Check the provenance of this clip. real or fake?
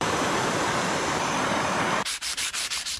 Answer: fake